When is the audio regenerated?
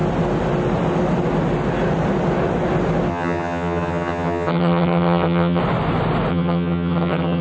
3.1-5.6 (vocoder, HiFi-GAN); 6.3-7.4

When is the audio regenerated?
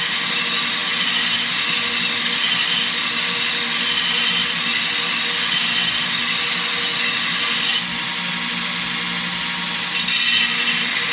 none